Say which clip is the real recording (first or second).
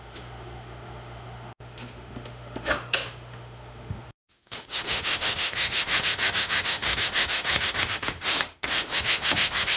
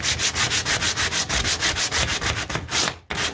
second